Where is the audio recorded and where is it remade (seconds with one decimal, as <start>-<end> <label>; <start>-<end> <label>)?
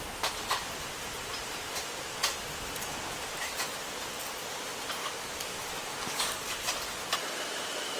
0.0-5.0 recorded; 5.0-6.5 remade; 6.5-8.0 recorded